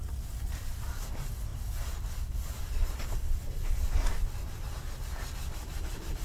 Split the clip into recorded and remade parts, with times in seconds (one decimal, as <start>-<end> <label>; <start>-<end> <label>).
0.0-6.2 recorded